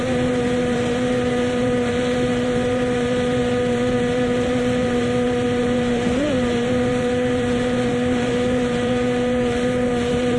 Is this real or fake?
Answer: fake